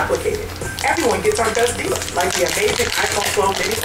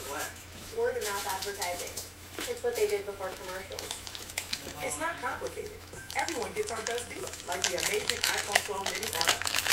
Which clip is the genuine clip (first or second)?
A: first